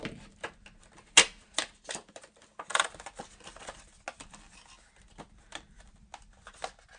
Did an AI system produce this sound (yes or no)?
no